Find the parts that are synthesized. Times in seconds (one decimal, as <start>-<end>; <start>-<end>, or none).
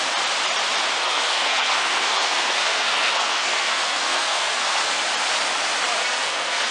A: 1.0-5.0; 6.0-6.7